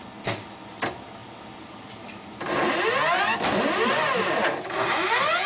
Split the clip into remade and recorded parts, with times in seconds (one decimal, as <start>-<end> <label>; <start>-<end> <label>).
0.0-5.5 recorded